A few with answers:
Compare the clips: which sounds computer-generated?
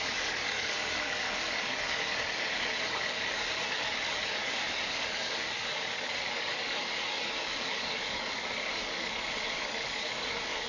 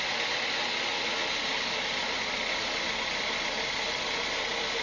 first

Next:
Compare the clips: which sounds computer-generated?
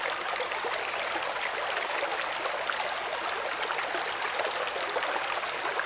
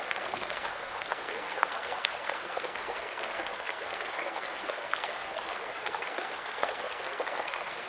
second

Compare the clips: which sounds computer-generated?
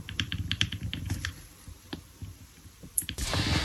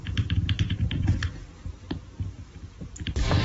first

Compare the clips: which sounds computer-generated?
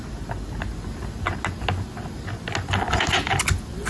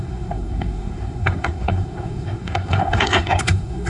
second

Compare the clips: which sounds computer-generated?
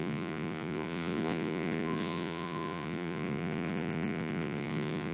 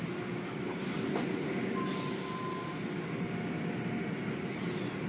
first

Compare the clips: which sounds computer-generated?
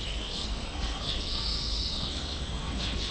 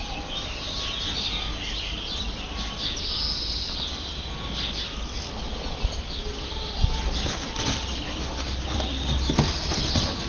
first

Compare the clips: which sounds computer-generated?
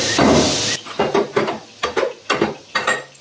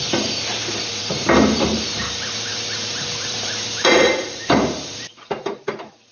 second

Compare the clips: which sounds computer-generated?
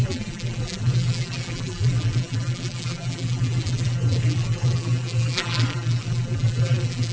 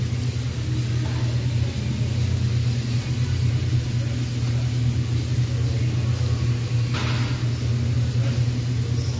first